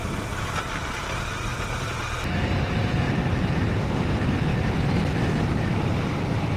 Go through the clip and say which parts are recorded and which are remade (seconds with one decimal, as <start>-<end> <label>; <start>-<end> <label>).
0.0-6.6 recorded